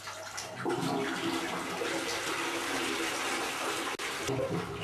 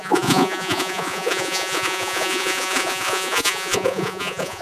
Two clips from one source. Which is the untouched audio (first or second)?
first